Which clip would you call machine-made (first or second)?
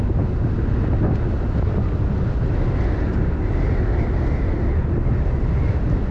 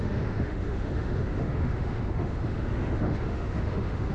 second